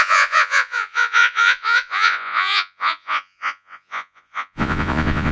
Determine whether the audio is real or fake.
fake